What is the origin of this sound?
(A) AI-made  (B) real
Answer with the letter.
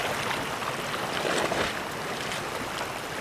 B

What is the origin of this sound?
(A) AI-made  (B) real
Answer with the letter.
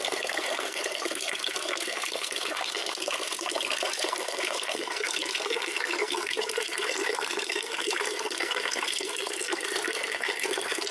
A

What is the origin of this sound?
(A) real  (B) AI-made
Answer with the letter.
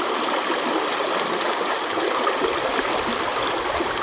A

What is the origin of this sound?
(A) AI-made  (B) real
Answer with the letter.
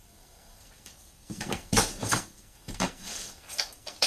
A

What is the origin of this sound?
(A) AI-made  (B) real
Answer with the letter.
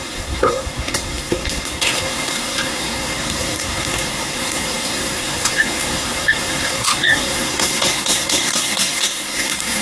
A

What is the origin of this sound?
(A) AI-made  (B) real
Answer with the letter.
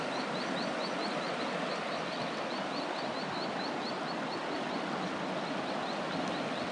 B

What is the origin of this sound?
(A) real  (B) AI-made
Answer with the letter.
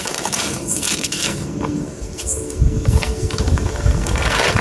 B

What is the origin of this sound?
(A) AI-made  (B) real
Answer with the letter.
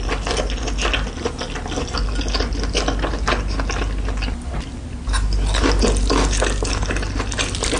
B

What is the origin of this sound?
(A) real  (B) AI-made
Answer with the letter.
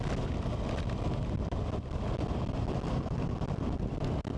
A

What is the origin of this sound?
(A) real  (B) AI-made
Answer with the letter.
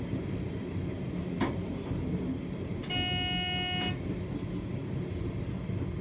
A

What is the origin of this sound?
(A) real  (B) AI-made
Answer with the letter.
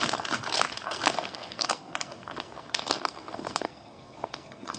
B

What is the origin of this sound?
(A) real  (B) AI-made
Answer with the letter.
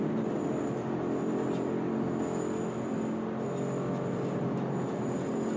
A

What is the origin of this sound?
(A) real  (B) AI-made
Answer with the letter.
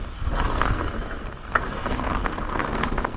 B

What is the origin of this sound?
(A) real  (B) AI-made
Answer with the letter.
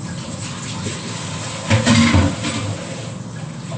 A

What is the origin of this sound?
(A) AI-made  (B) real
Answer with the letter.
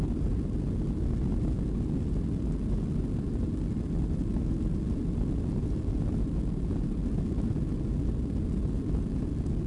B